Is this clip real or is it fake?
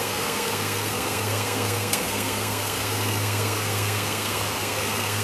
fake